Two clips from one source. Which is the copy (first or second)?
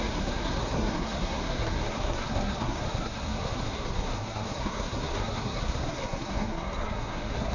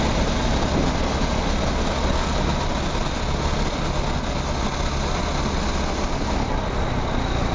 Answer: first